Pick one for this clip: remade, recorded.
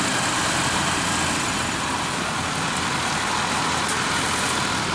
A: recorded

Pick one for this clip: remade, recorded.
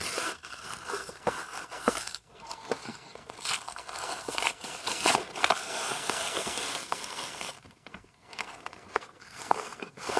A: remade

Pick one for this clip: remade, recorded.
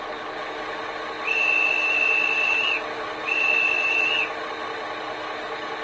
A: recorded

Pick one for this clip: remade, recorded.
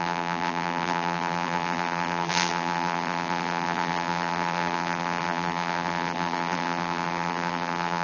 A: remade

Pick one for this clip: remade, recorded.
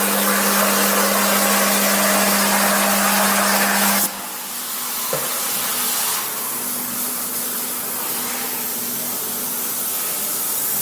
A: recorded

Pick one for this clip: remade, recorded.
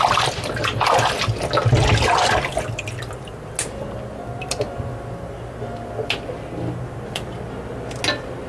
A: recorded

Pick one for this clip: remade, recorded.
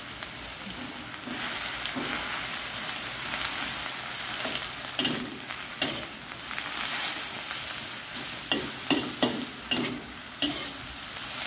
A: recorded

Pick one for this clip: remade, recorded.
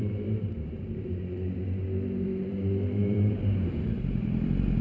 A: remade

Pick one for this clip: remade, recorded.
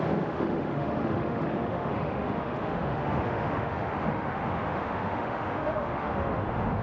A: remade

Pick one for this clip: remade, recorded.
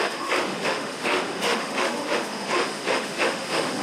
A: remade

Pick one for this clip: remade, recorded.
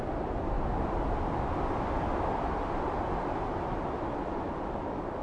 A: recorded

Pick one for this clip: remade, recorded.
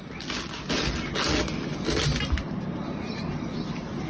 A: recorded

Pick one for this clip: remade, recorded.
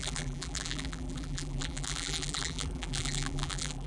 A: remade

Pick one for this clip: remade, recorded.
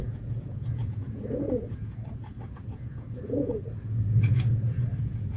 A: remade